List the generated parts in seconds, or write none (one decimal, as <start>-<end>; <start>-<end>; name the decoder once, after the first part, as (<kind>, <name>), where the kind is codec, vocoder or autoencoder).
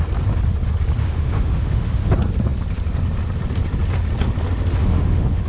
1.0-2.1 (autoencoder, DAC-VAE); 4.8-5.5